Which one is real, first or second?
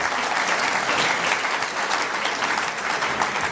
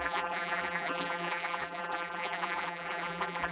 first